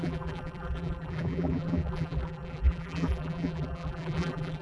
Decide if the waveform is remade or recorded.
remade